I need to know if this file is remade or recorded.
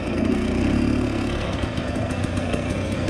remade